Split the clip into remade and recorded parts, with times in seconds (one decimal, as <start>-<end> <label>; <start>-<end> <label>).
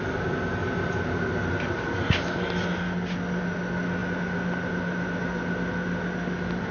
0.0-0.6 recorded; 0.6-1.1 remade; 1.1-6.7 recorded